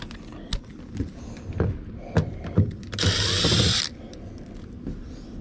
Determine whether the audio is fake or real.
real